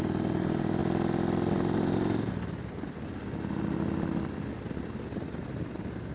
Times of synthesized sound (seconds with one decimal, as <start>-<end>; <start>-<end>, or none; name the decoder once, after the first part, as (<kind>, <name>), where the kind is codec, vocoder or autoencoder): none